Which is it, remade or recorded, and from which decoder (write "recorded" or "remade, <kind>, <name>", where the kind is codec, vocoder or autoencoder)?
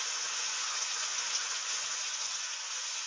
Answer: remade, vocoder, Vocos